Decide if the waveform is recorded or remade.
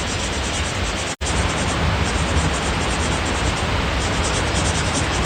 recorded